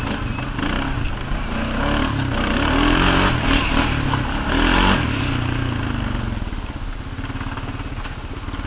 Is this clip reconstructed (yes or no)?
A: no